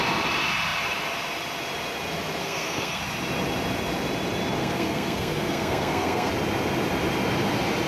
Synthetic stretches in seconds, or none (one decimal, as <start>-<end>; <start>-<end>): 2.4-3.0; 4.6-6.3